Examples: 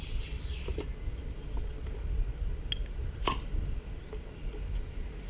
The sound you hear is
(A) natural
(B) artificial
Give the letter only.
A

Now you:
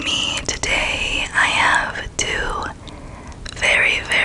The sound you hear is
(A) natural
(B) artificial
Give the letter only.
A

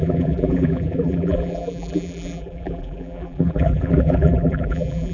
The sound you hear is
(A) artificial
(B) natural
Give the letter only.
A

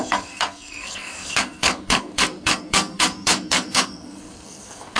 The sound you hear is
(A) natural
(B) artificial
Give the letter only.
B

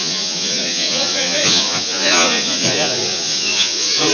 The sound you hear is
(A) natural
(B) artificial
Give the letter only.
B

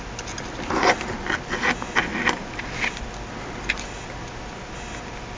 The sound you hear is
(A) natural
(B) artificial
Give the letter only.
A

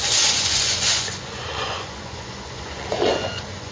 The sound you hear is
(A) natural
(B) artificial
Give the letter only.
B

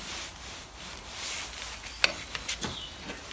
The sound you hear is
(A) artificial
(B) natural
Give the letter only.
B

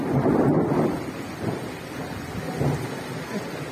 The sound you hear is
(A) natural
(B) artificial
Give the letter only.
B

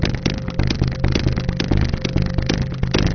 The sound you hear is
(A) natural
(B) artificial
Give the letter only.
A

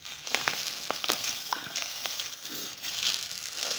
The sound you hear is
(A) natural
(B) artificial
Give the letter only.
B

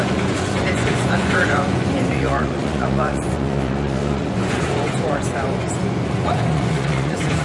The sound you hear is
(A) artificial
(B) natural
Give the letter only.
A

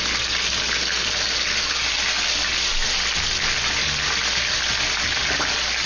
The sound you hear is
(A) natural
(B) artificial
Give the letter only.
A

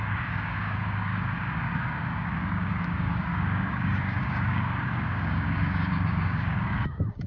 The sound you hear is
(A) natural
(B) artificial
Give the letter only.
B